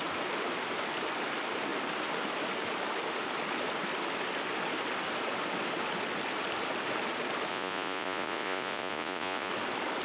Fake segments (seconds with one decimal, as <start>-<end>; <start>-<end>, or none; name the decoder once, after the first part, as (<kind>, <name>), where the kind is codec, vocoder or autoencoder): 7.5-9.5 (vocoder, Vocos)